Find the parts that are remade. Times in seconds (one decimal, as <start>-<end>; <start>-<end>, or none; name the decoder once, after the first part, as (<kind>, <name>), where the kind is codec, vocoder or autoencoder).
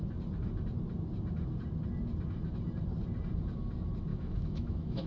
4.1-5.1 (autoencoder, DAC-VAE)